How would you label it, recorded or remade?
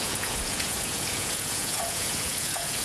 remade